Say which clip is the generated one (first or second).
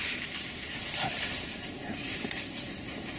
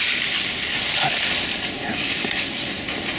first